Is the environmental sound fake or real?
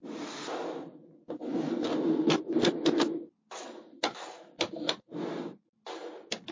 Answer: real